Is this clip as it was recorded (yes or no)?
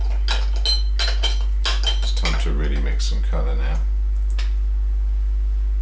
yes